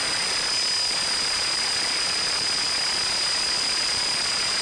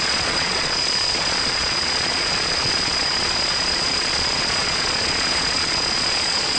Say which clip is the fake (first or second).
second